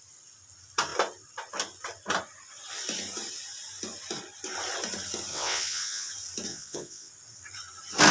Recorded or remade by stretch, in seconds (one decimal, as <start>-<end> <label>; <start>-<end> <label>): 0.0-5.3 recorded; 5.3-6.1 remade; 6.1-6.5 recorded; 6.5-7.1 remade; 7.1-8.1 recorded